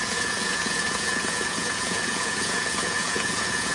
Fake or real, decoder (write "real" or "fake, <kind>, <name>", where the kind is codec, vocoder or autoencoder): fake, vocoder, Vocos